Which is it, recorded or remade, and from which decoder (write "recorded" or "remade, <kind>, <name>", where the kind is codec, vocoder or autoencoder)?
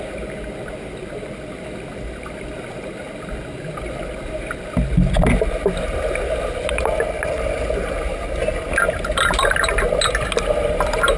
recorded